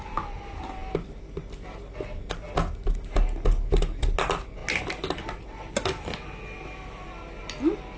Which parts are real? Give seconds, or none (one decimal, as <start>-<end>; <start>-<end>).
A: 0.0-8.0

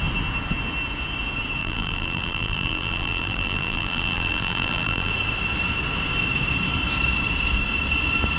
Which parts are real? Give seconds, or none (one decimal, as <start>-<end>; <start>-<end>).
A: 0.0-1.6; 5.1-8.4

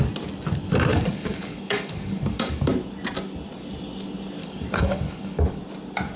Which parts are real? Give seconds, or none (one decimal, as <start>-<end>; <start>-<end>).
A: 0.0-0.9; 2.7-4.4; 5.6-6.2

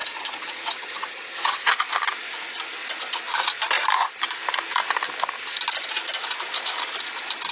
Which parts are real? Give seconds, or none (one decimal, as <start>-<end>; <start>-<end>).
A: 1.7-7.5

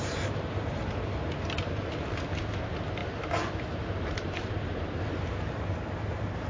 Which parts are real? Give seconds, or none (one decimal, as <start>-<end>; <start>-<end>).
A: 3.0-3.5

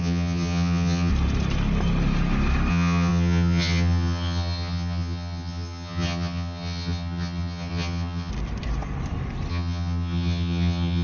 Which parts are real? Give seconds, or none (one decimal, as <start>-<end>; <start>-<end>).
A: 1.1-2.7; 8.3-9.5

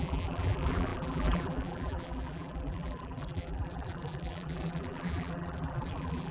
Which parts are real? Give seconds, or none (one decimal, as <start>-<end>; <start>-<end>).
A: none